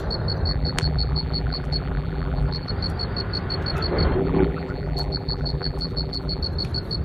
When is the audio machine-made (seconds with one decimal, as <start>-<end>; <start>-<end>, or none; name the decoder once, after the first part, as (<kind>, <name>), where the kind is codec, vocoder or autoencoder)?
0.5-2.7 (vocoder, BigVGAN v2); 4.2-6.4